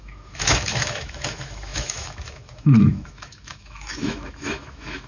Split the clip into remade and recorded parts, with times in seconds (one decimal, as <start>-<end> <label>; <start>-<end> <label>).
0.0-5.1 remade